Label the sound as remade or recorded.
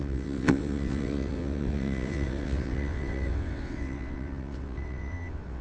remade